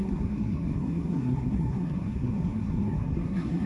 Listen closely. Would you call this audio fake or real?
fake